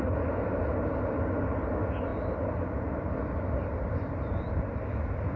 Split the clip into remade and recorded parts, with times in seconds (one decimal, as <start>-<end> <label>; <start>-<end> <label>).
0.0-5.4 recorded